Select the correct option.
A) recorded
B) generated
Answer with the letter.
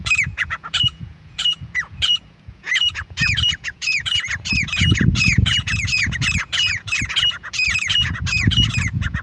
B